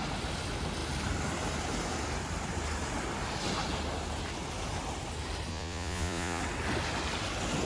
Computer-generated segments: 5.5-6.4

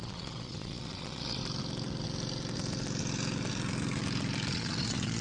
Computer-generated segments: 0.0-1.4; 4.5-5.2

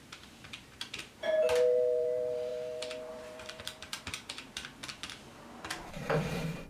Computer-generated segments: 0.0-4.8; 5.6-6.7

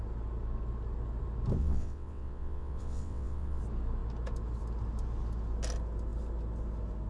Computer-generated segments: 1.6-3.6

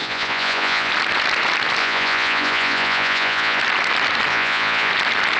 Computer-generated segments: 0.0-0.9; 1.8-3.6; 4.3-4.9